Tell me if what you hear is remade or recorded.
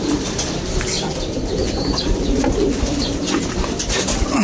remade